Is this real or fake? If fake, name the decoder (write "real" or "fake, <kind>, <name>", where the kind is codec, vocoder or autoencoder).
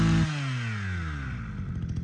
real